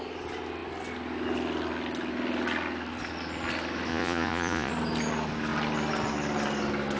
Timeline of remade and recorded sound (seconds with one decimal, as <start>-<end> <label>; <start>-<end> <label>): 0.0-3.9 recorded; 3.9-4.7 remade; 4.7-7.0 recorded